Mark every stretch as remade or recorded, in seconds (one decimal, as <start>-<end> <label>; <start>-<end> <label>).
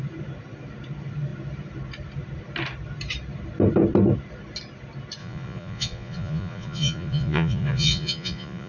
0.0-5.2 recorded; 5.2-8.7 remade